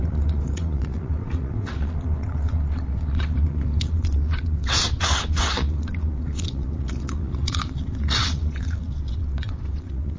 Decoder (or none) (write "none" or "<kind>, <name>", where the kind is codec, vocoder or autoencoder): vocoder, WaveNeXt